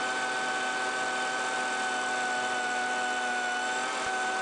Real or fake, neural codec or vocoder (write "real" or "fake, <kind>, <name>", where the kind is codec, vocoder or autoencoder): real